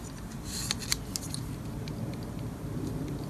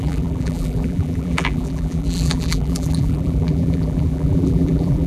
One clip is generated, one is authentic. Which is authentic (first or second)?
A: first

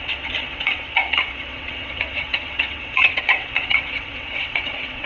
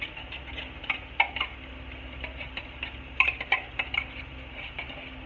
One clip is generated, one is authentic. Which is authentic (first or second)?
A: second